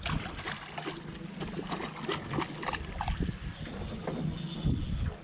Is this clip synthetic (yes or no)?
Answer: no